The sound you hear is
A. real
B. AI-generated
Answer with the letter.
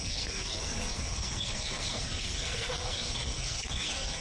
B